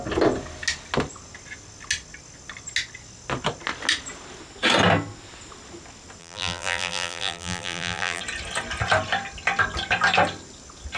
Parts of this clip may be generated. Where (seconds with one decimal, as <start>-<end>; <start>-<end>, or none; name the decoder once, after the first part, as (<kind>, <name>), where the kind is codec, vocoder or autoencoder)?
6.2-8.2 (vocoder, BigVGAN v2)